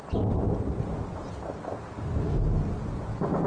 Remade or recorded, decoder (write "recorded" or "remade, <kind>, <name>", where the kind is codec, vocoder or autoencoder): recorded